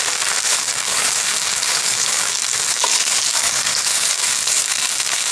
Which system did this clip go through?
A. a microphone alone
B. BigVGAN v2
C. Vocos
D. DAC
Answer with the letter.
D